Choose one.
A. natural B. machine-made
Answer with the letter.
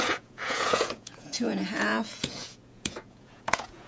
B